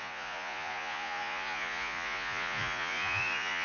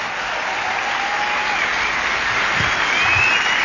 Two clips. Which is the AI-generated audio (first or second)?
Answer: first